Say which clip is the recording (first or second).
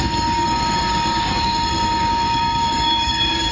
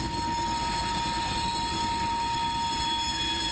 second